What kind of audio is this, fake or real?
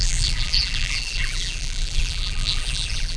fake